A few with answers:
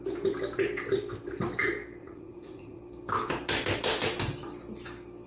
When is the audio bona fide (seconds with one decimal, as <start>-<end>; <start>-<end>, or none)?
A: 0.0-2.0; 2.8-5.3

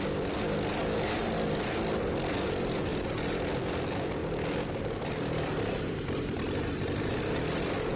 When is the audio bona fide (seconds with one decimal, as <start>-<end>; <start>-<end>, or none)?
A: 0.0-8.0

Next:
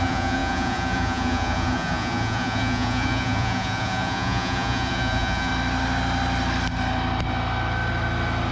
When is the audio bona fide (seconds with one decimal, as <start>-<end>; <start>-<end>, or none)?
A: 5.5-8.5

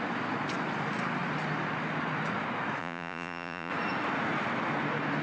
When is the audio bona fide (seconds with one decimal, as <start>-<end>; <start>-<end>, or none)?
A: 0.0-2.8; 3.7-5.2